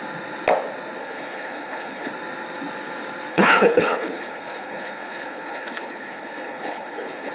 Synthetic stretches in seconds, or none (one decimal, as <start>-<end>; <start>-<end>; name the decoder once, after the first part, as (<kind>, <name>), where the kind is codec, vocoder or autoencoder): 1.0-2.1 (codec, HILCodec); 3.3-7.3